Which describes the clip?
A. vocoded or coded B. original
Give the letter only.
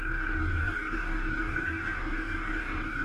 A